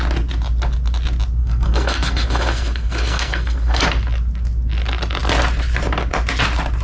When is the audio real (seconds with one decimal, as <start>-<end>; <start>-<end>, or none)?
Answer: 0.0-1.4; 3.8-6.8